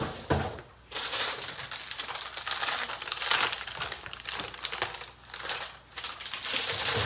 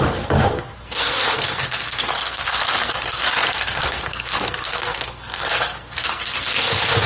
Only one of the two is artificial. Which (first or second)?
second